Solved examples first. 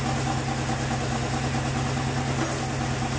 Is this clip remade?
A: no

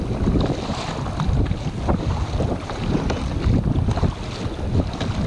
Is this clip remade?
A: no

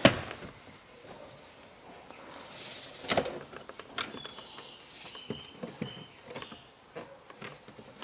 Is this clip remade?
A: no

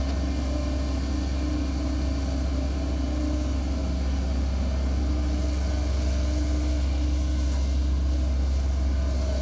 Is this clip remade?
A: no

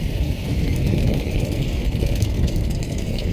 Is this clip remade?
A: yes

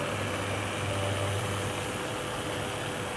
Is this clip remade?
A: no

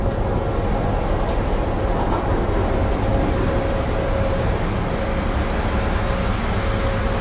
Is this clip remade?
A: no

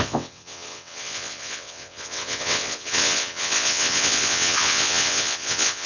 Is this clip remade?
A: yes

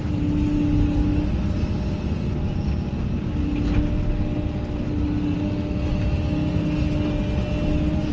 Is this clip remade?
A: no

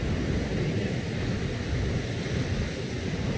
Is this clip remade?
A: no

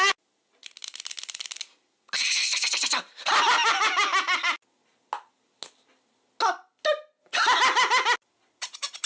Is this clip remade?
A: no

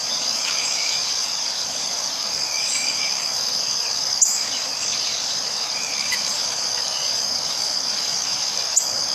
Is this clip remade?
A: yes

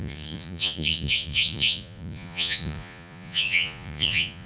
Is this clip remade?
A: yes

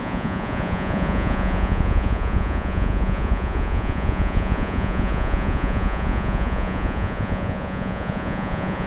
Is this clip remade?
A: yes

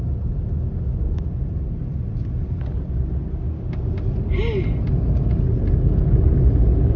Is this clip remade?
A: no